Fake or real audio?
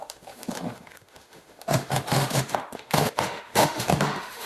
fake